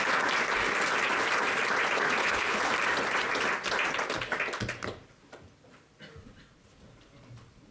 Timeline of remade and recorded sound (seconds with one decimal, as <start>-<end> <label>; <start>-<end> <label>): 0.0-2.2 recorded; 2.2-2.7 remade; 2.7-7.7 recorded